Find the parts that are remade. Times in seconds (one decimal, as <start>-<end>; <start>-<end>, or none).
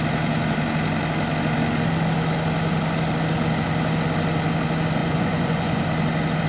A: 5.0-5.8